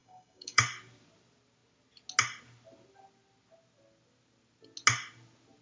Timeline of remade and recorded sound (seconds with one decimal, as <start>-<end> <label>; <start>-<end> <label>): 0.0-0.6 remade; 0.6-5.6 recorded